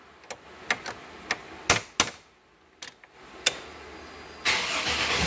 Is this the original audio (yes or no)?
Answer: yes